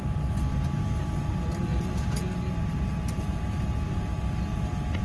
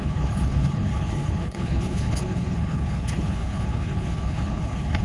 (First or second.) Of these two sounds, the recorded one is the first